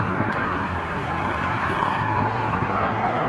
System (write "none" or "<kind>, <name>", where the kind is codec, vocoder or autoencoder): codec, SNAC